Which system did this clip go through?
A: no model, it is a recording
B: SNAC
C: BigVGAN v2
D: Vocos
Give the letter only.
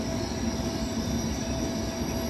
A